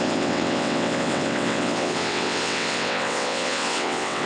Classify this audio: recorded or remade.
remade